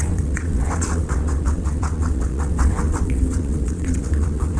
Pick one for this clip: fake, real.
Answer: fake